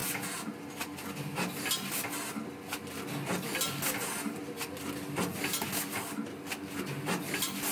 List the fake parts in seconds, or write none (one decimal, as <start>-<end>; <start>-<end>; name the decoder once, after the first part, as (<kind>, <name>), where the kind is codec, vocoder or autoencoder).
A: none